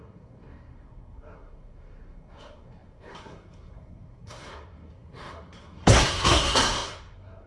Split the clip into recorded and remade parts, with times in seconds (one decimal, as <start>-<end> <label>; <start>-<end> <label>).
0.0-7.5 remade